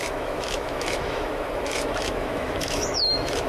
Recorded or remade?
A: remade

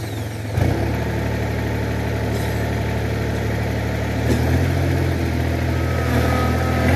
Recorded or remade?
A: recorded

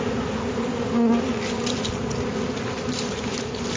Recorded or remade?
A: recorded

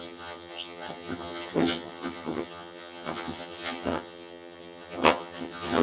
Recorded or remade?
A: remade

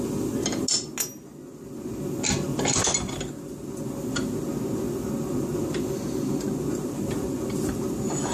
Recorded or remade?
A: recorded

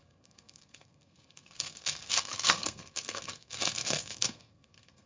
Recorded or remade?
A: remade